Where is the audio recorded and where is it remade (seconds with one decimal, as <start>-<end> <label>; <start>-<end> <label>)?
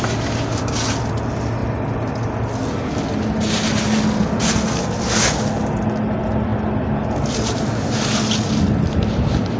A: 0.0-9.6 recorded